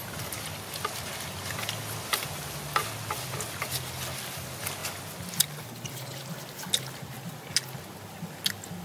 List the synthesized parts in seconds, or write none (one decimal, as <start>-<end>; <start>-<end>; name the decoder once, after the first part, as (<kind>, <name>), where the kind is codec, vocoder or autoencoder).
none